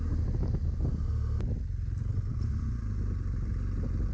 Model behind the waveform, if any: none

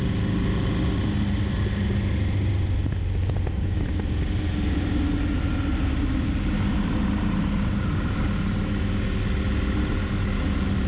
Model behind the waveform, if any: none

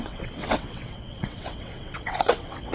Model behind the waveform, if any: vocoder, WaveNeXt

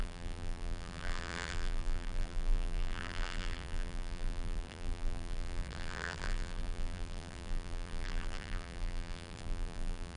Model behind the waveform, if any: vocoder, BigVGAN v2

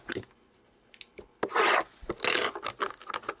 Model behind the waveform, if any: none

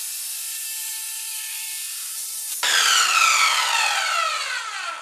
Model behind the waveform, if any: none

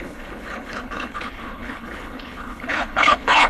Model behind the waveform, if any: codec, HILCodec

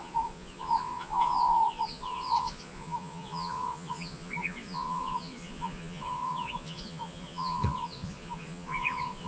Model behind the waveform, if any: vocoder, Vocos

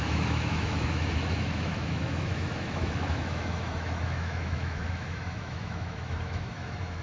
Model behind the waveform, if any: autoencoder, DAC-VAE